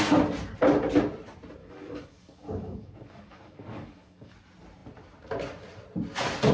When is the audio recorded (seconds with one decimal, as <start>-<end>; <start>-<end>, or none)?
0.0-1.6; 4.3-6.5

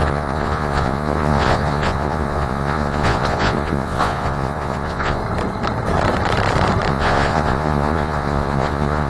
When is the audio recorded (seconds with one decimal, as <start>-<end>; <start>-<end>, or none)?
5.2-6.9

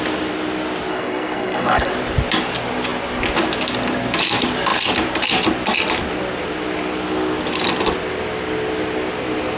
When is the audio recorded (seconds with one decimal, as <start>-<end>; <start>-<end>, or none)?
0.0-0.9; 1.9-9.6

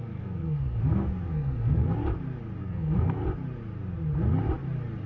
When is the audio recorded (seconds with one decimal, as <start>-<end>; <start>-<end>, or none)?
2.0-2.6; 3.2-5.1

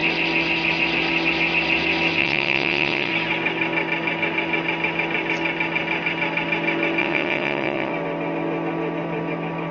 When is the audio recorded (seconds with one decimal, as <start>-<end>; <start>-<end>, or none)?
0.0-2.2; 3.1-7.0; 7.9-9.7

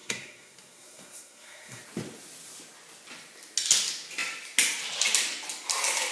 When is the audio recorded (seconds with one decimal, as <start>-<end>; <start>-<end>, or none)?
1.8-6.1

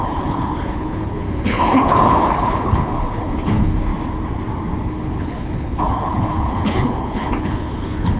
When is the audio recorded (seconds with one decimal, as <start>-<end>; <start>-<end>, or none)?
3.9-4.8